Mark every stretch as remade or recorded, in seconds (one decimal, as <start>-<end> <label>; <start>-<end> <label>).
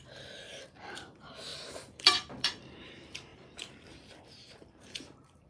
0.0-5.5 remade